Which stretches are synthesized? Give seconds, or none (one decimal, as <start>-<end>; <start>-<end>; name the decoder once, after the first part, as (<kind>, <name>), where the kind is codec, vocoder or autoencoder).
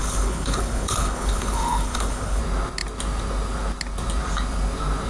0.0-2.4 (codec, HILCodec)